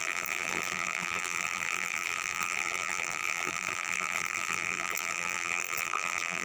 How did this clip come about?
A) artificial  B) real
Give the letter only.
A